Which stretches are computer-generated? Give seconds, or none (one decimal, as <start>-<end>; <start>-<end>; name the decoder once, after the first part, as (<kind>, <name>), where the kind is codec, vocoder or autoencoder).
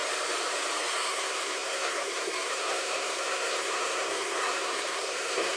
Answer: 0.9-5.6 (codec, SNAC)